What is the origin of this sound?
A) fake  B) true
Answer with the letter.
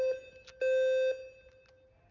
B